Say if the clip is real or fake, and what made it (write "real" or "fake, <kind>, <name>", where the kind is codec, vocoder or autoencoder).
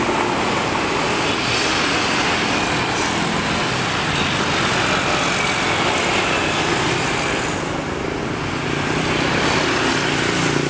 real